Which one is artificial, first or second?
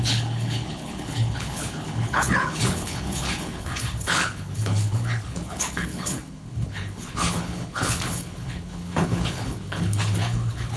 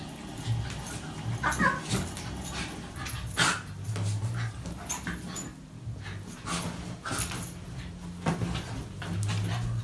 first